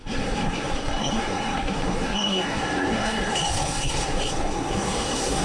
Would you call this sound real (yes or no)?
no